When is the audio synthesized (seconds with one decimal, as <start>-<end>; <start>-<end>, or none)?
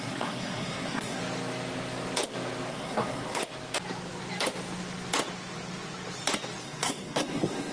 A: 0.0-1.2; 2.7-3.4; 6.6-7.7